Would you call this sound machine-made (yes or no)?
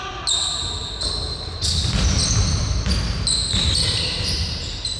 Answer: no